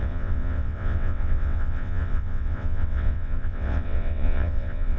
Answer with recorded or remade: remade